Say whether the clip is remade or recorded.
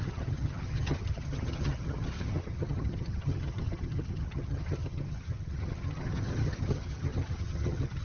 remade